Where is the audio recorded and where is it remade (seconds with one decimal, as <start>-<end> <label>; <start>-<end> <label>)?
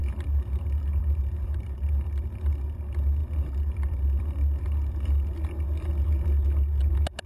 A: 0.0-7.3 recorded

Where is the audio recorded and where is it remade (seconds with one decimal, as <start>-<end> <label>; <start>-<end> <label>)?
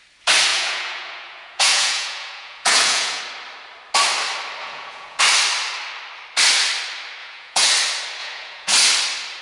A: 0.0-0.5 recorded; 0.5-3.2 remade; 3.2-4.6 recorded; 4.6-5.2 remade; 5.2-7.2 recorded; 7.2-7.7 remade; 7.7-8.2 recorded; 8.2-8.7 remade; 8.7-9.4 recorded